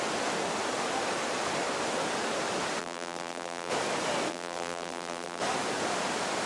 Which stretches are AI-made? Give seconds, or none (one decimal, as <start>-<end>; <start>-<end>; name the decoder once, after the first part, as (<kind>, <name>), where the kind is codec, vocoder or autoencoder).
2.8-3.7 (vocoder, BigVGAN v2); 4.3-5.4